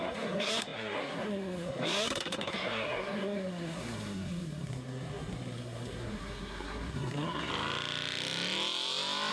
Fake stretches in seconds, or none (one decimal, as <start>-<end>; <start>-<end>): 0.0-7.5